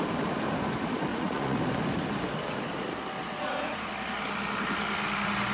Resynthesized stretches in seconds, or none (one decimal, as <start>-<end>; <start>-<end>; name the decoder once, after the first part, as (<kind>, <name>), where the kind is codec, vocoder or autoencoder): 1.1-1.6 (vocoder, Vocos); 3.2-3.9